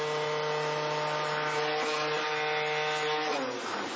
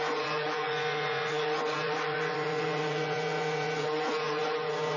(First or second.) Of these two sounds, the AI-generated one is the second